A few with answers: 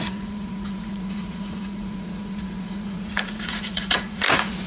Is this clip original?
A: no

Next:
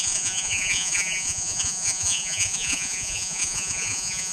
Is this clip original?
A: no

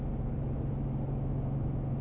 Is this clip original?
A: yes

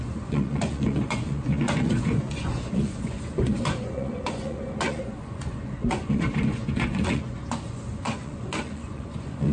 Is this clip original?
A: no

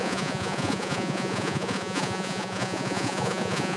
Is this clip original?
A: no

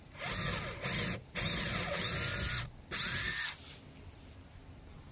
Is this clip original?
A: yes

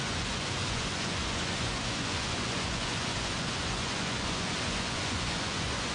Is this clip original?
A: no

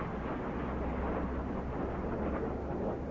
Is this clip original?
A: yes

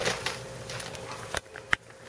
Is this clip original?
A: yes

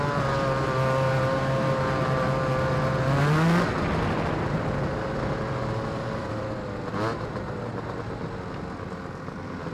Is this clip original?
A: yes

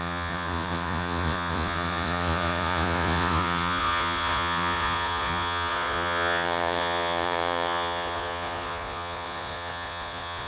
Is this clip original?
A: no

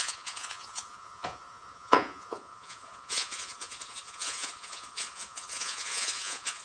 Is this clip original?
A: no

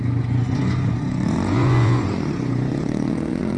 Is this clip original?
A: no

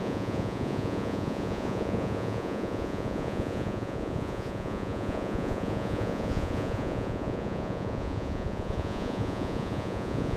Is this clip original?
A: no